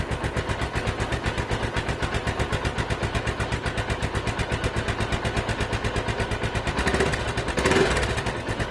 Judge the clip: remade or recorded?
recorded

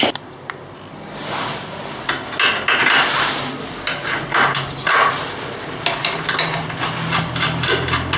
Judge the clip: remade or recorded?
recorded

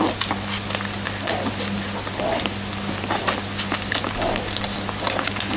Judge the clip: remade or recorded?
recorded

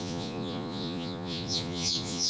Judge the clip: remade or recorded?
remade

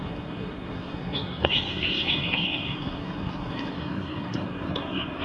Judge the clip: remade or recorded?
remade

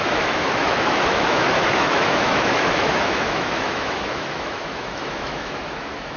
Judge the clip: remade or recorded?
remade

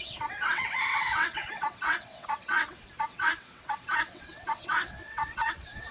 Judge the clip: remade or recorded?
remade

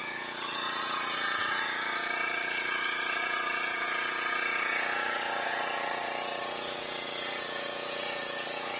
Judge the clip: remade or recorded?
remade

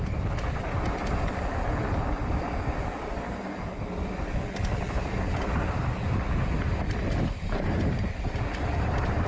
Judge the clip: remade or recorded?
recorded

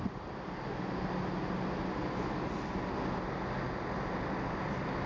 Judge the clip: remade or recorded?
recorded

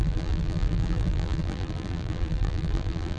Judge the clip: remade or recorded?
remade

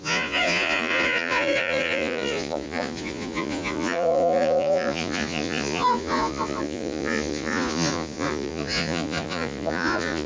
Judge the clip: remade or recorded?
remade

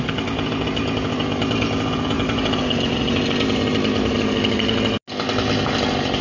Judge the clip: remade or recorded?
recorded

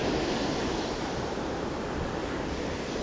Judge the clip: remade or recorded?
recorded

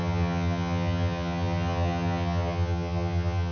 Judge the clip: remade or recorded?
remade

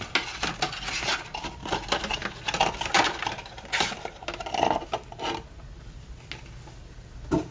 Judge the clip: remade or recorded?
recorded